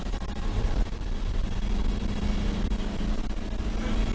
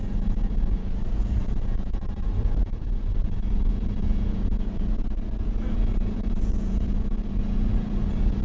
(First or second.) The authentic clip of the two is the first